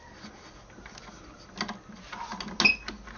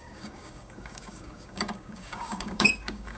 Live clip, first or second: first